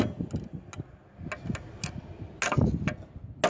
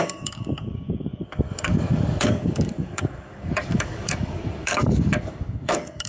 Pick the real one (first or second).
first